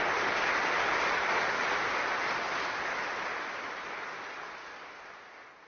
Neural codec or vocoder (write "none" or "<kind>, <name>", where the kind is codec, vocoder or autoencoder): none